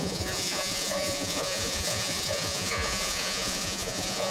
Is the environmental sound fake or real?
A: fake